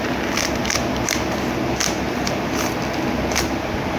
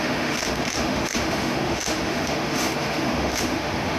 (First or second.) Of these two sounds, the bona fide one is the first